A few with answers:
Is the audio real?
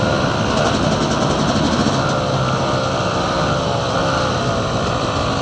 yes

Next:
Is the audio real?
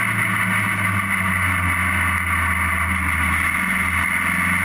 yes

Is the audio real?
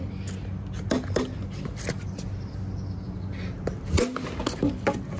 yes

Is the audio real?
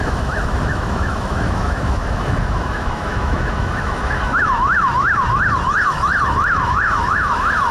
no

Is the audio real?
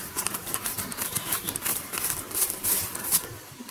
yes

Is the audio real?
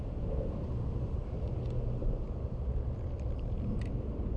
yes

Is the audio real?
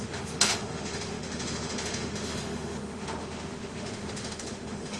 no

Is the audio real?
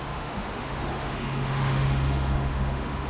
no